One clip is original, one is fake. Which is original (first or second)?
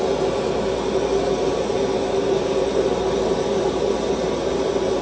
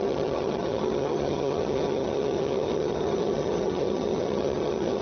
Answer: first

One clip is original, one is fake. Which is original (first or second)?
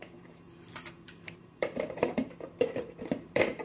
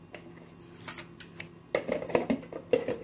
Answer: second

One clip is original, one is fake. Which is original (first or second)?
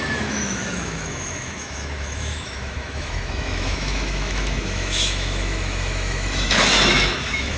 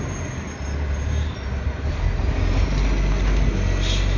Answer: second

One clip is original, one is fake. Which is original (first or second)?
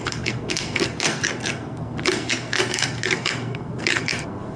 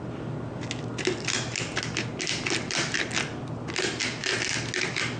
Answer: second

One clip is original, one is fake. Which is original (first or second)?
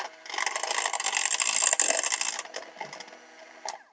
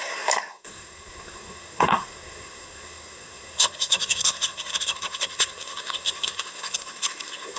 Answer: first